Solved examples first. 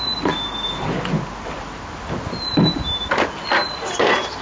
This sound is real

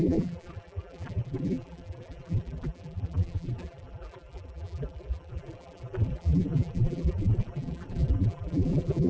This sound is fake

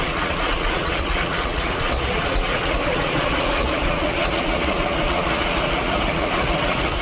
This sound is fake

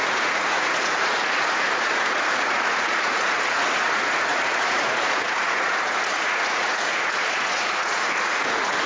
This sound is fake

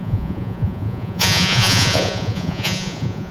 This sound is fake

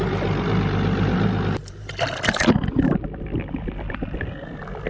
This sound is real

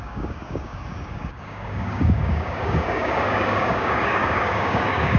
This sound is fake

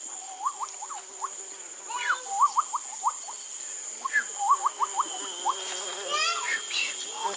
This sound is real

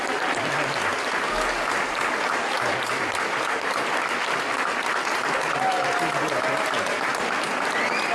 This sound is real